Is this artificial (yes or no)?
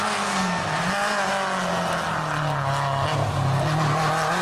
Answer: no